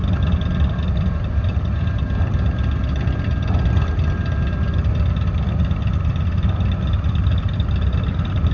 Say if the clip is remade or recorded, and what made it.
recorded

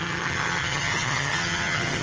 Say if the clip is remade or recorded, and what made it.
remade, vocoder, HiFi-GAN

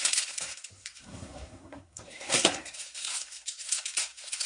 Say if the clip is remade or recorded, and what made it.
remade, codec, SNAC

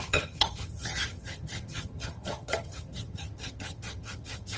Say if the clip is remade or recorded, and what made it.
remade, vocoder, HiFi-GAN